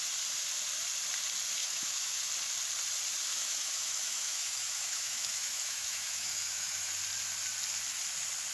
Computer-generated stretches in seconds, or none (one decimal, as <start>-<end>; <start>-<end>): 1.6-2.3; 3.3-6.9

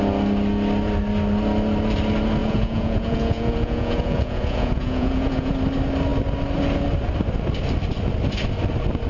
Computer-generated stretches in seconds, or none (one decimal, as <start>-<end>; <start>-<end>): 2.4-5.5

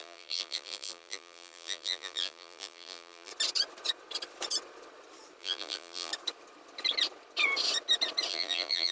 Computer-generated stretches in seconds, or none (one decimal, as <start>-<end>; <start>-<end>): 0.0-3.3; 5.4-6.1; 8.3-8.9

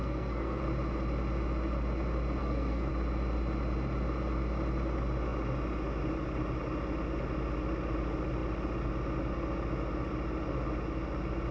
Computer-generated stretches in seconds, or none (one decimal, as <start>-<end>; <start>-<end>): 0.0-0.6; 2.4-2.9

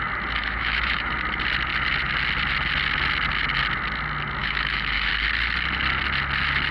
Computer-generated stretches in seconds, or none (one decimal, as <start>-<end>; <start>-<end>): 0.4-1.1; 4.4-5.1

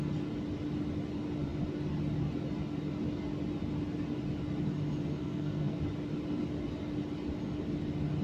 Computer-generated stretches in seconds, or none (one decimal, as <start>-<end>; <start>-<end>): 5.2-5.8

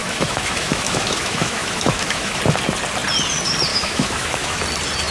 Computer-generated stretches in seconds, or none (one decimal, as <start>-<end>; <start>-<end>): 0.0-2.4; 3.7-4.6

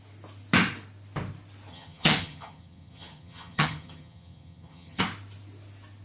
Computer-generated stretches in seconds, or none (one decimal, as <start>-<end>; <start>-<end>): 1.7-5.0